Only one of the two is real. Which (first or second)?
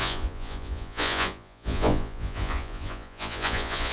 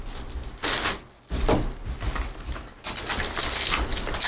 second